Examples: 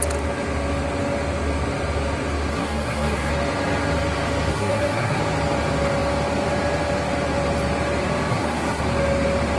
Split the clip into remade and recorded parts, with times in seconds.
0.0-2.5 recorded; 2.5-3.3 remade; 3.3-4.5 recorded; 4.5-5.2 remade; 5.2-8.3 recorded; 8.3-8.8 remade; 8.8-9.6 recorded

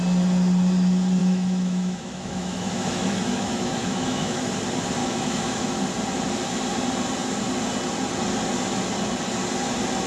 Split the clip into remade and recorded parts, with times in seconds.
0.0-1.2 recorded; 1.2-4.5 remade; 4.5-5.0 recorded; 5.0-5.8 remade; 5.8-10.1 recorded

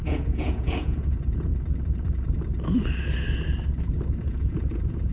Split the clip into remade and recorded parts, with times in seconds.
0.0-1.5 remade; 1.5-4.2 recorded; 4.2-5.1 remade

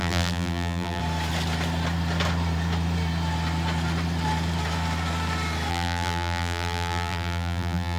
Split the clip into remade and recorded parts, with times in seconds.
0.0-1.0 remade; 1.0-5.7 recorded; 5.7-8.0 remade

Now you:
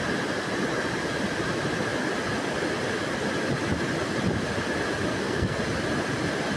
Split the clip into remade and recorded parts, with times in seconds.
0.0-5.1 recorded; 5.1-5.6 remade; 5.6-6.6 recorded